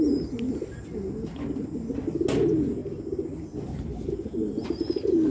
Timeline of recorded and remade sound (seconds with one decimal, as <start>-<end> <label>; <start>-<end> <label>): 0.0-5.3 recorded